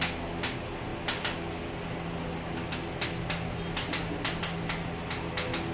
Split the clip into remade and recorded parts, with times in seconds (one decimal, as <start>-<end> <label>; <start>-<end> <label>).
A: 0.0-5.7 recorded